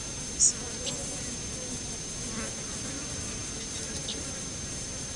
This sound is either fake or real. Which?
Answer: real